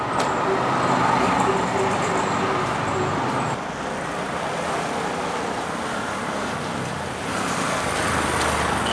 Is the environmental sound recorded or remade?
recorded